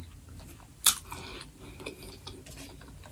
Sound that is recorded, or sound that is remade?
recorded